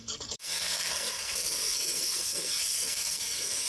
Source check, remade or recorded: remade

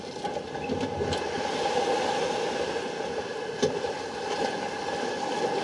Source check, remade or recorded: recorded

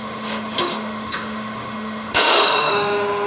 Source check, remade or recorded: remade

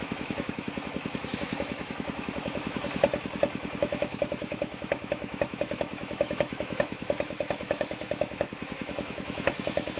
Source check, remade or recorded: remade